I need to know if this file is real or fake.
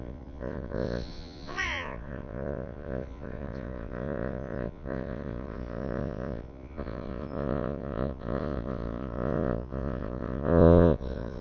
fake